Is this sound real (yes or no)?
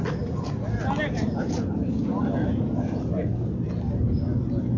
yes